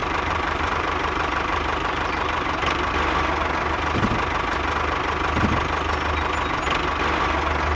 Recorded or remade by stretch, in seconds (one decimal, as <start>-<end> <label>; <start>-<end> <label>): 0.0-2.9 remade; 2.9-7.7 recorded